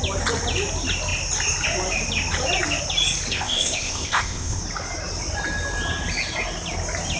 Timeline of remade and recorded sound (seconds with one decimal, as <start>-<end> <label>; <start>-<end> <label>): 0.0-3.3 recorded; 3.3-4.6 remade; 4.6-7.2 recorded